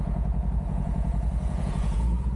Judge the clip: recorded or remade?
remade